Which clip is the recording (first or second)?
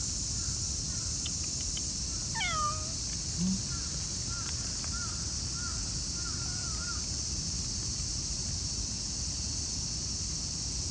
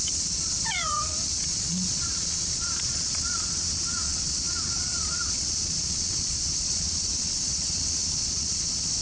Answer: first